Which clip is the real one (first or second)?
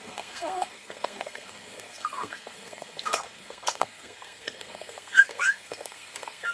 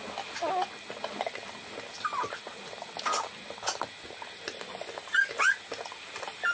second